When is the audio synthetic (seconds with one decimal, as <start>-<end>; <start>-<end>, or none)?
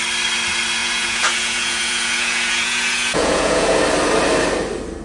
0.8-3.8